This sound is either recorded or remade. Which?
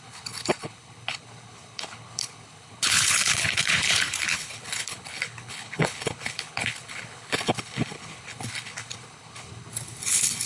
remade